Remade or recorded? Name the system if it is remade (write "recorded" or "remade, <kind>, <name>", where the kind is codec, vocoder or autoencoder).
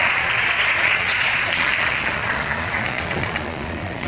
remade, vocoder, Vocos